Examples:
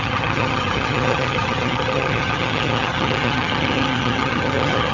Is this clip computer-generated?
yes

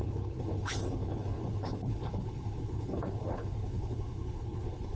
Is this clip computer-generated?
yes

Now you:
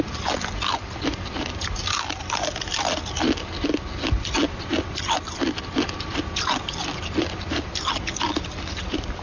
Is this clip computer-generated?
no